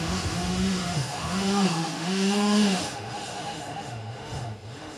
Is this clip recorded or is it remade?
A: remade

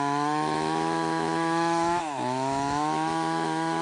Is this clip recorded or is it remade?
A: remade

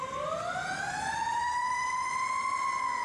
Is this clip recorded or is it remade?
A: recorded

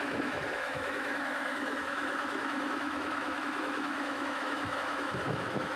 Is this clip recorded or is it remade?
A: remade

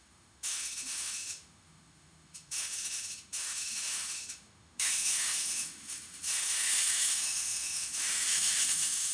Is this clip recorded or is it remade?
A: remade